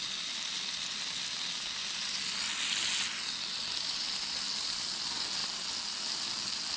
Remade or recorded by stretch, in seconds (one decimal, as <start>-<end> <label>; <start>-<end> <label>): 0.0-6.8 recorded